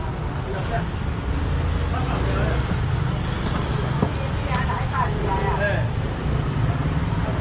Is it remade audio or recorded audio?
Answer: recorded